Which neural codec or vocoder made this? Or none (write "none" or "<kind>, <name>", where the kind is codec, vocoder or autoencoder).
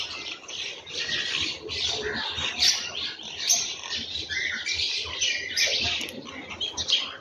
none